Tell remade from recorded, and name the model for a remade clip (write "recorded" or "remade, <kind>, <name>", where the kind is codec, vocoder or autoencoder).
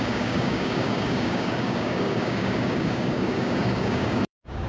remade, codec, DAC